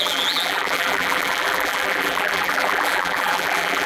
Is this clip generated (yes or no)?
yes